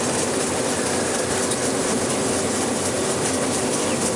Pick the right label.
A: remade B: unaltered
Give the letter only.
B